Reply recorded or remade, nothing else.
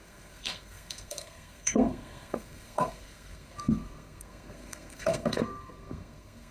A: remade